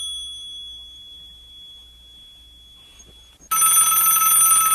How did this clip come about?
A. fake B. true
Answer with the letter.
B